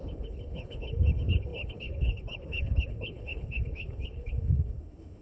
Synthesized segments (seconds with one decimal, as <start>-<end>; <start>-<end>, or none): 0.0-5.2